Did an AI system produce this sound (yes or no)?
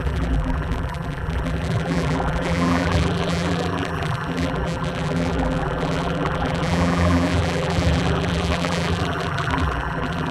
yes